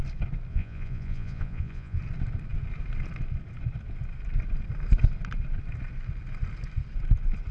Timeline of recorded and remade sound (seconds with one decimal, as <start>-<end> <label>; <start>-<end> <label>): 0.0-0.5 recorded; 0.5-2.0 remade; 2.0-7.5 recorded